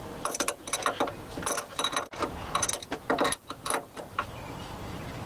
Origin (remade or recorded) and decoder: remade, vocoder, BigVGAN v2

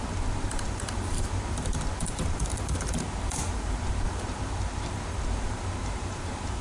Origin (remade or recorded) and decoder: remade, vocoder, BigVGAN v2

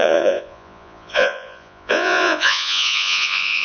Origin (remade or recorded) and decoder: remade, vocoder, Vocos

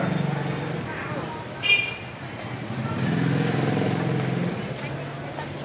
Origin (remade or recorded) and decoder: recorded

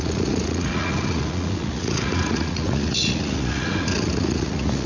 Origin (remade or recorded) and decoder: remade, vocoder, Vocos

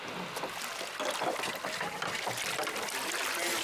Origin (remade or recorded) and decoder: recorded